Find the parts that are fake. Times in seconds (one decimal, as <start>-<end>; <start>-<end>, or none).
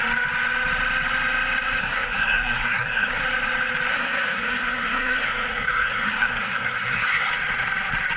1.8-3.2; 3.9-7.3